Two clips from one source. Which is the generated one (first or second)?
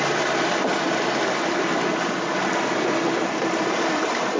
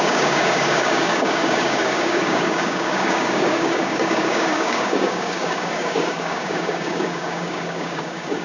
second